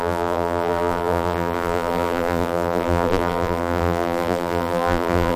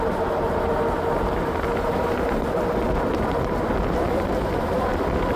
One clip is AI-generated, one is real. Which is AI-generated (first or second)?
first